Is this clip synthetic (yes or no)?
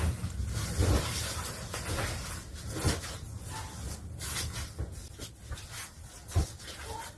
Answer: no